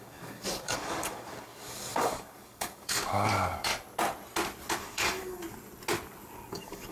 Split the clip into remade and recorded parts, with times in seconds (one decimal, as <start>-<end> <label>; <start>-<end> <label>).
0.0-3.7 remade; 3.7-4.8 recorded; 4.8-5.4 remade; 5.4-6.5 recorded; 6.5-6.9 remade

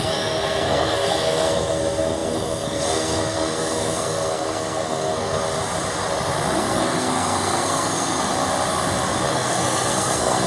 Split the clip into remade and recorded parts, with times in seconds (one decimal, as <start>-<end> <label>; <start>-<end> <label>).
0.0-5.4 remade; 5.4-6.6 recorded; 6.6-8.3 remade; 8.3-9.3 recorded; 9.3-10.5 remade

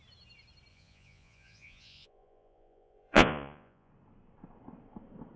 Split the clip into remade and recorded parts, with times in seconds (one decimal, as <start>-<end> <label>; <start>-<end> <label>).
0.0-0.7 recorded; 0.7-3.9 remade; 3.9-5.4 recorded

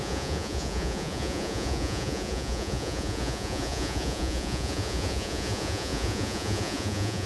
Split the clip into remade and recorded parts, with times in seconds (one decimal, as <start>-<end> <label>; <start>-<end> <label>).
0.0-7.3 remade

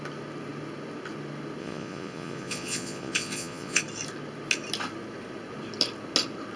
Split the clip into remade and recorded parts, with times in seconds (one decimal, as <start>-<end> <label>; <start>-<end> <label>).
0.0-1.6 recorded; 1.6-3.8 remade; 3.8-6.6 recorded

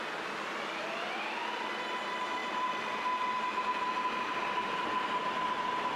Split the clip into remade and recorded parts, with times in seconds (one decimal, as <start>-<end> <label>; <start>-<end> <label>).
0.0-2.4 recorded; 2.4-3.0 remade; 3.0-4.3 recorded; 4.3-5.2 remade; 5.2-6.0 recorded